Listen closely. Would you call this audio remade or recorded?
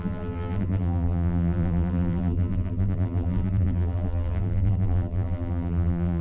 remade